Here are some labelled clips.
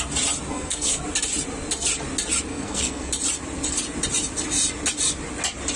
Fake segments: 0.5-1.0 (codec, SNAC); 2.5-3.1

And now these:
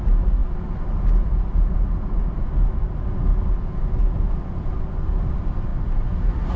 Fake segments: 5.7-6.6 (vocoder, BigVGAN v2)

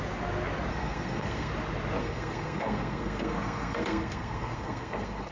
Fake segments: 0.7-1.5 (codec, SNAC); 2.0-5.3

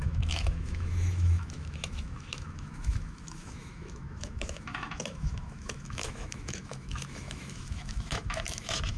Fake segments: 0.0-9.0 (autoencoder, DAC-VAE)

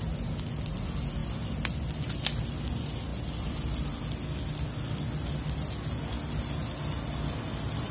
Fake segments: none

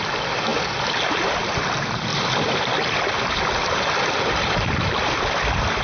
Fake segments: 2.1-5.8 (vocoder, BigVGAN v2)